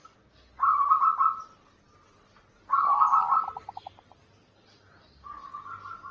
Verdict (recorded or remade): recorded